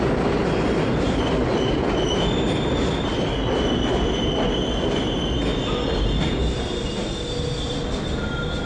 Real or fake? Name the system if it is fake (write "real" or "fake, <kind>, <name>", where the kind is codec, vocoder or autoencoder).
real